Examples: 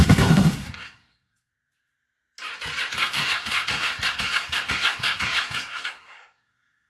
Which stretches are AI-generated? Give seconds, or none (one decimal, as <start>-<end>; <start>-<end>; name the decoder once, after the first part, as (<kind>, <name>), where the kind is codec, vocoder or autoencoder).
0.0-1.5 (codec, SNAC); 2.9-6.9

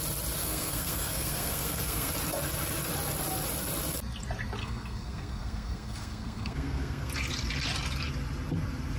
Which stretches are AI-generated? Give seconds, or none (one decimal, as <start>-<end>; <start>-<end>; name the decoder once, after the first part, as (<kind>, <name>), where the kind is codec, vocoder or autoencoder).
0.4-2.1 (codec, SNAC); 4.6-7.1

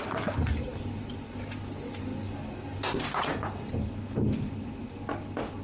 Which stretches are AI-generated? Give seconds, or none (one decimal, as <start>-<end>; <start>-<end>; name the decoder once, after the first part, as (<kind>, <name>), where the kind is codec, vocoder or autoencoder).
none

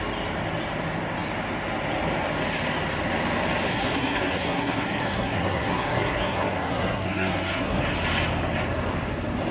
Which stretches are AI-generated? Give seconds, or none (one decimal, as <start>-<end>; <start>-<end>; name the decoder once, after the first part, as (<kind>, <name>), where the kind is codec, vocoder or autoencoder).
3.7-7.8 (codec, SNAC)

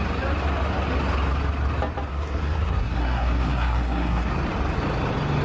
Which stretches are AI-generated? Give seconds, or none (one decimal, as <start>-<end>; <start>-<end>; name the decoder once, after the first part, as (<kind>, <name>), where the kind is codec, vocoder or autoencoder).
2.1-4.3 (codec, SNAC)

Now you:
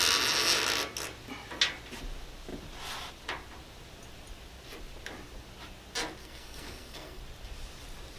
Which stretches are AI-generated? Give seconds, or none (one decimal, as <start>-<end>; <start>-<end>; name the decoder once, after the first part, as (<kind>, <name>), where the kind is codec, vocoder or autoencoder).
6.2-7.2 (codec, SNAC)

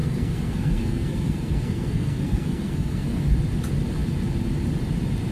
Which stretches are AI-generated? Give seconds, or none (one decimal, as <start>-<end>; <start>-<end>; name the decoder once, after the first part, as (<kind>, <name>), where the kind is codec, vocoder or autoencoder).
0.0-3.2 (codec, SNAC)

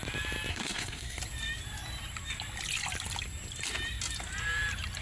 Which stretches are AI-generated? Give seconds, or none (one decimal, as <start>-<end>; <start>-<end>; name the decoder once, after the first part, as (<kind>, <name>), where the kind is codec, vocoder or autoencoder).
0.5-1.2 (codec, SNAC)